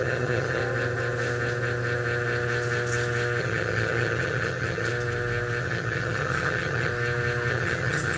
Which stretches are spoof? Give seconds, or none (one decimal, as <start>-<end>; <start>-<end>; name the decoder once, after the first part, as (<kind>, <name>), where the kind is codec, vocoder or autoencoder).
0.0-0.6 (vocoder, HiFi-GAN); 3.4-4.9; 5.6-6.9; 7.5-8.2